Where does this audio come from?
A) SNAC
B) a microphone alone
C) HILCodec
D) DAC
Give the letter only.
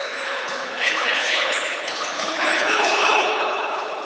C